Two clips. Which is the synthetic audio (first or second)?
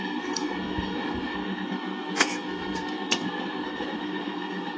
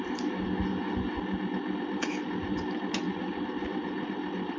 first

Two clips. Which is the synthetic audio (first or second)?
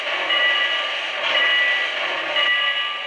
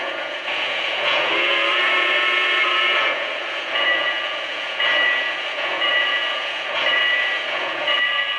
second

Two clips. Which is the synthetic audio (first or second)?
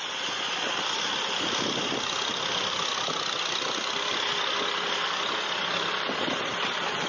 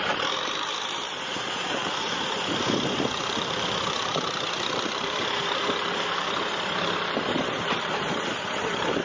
second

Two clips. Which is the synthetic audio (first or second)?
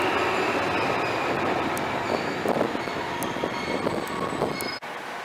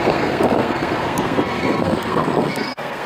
second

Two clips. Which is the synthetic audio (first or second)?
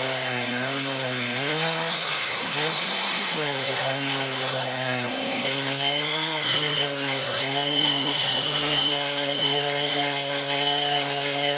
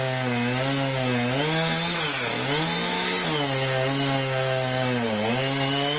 first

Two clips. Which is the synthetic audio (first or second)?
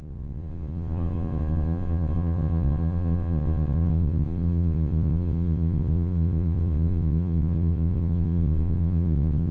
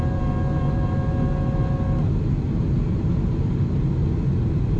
first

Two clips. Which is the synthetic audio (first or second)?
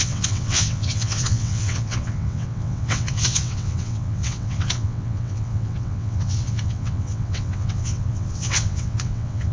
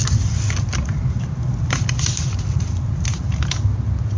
first